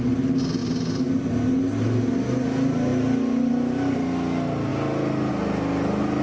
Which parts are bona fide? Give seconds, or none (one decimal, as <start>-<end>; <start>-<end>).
0.0-6.2